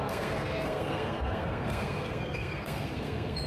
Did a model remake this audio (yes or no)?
yes